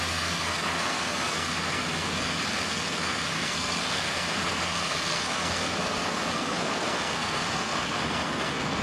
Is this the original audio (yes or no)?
no